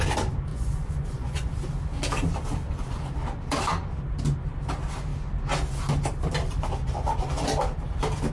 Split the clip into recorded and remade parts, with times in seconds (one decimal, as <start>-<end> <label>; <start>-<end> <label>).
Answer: 0.0-0.5 recorded; 0.5-1.5 remade; 1.5-8.3 recorded